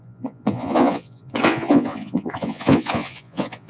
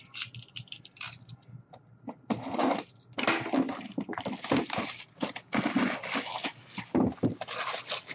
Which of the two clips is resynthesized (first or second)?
first